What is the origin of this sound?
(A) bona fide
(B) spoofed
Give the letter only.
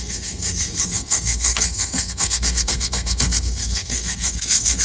B